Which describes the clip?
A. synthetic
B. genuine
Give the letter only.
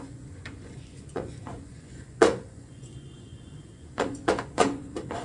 A